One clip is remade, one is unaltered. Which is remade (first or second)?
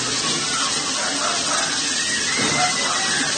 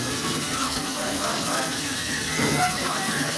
second